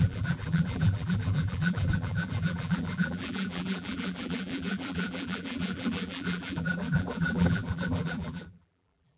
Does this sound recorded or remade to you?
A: remade